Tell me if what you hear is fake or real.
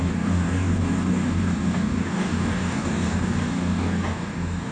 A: fake